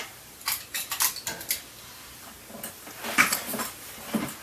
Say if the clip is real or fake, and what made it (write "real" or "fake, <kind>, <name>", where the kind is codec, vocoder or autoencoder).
real